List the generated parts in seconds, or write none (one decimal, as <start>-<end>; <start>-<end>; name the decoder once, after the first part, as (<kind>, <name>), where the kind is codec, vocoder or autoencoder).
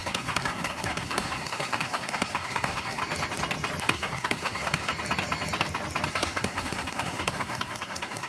0.0-3.0 (codec, SNAC); 3.8-4.9; 6.1-8.3